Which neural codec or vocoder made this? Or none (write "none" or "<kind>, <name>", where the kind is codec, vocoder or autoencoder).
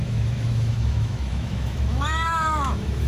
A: autoencoder, DAC-VAE